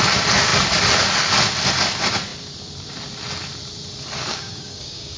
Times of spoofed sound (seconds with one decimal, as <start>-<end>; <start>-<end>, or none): 4.3-5.2